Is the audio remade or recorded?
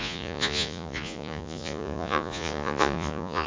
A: remade